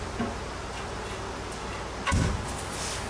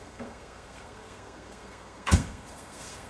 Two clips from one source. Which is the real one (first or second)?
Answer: first